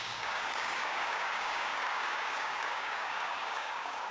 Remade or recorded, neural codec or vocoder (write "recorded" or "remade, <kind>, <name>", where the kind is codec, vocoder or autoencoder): remade, codec, DAC